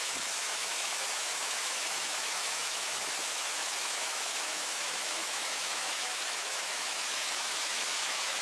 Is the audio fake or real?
fake